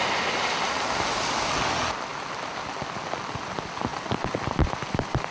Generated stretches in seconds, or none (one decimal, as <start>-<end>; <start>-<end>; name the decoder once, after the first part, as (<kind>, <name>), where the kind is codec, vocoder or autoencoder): none